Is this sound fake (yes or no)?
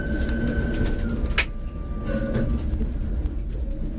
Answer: no